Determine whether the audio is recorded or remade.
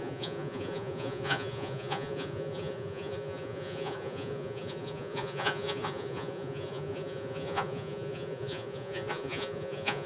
remade